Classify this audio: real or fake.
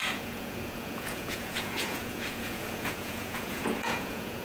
fake